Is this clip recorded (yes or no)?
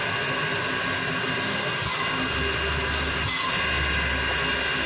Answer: yes